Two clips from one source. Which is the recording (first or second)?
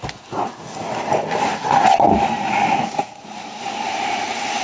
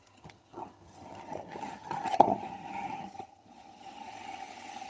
first